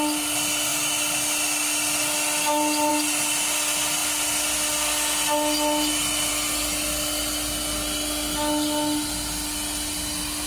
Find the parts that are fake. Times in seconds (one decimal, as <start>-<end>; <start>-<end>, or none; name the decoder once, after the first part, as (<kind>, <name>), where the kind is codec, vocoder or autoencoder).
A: none